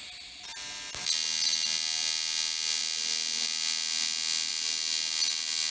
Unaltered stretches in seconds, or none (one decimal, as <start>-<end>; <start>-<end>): 0.0-5.7